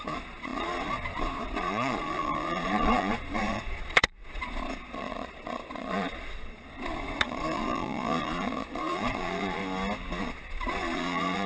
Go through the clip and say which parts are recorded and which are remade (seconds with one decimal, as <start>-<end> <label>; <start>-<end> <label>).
0.0-9.6 remade; 9.6-10.2 recorded; 10.2-11.5 remade